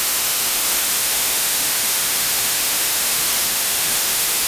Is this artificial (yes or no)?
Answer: yes